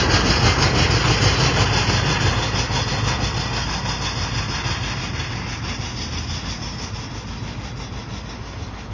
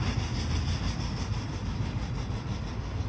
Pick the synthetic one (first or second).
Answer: second